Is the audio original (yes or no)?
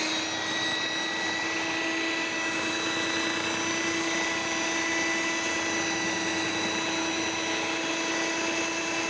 yes